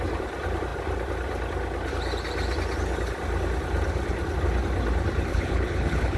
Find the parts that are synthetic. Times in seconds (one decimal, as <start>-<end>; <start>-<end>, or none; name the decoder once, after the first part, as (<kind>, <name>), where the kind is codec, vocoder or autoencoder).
5.3-6.2 (codec, HILCodec)